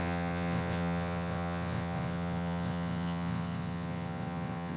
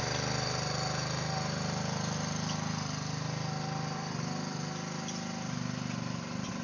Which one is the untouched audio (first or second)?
second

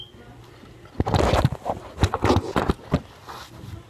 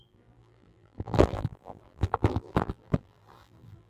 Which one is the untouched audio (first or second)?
first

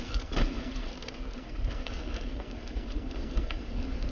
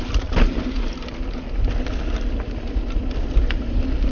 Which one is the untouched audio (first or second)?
second